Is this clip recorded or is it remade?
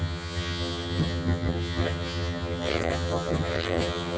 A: remade